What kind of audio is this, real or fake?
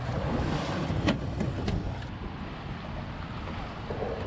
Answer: real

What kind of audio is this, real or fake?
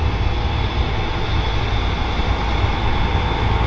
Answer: real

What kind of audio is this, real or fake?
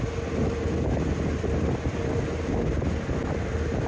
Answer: real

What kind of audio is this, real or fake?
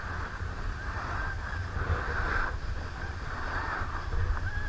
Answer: real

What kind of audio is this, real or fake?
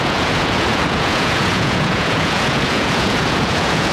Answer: fake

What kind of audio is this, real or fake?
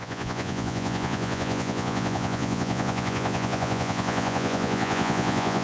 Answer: fake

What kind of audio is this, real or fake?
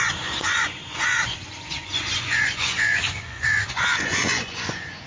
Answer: fake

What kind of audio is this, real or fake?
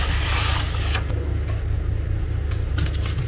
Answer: real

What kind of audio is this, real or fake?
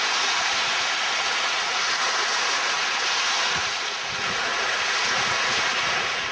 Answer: fake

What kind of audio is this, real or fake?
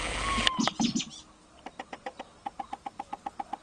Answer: real